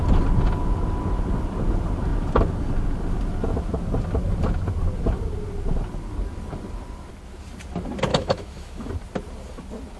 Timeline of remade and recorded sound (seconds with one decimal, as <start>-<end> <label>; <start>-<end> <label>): 0.0-8.1 recorded; 8.1-8.9 remade; 8.9-10.0 recorded